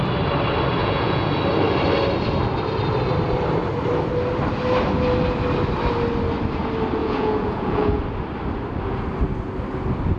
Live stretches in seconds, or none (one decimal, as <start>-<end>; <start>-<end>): 0.0-0.8; 1.3-7.0; 8.0-10.2